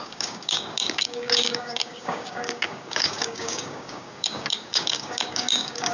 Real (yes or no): no